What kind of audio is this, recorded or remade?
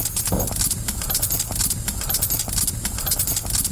recorded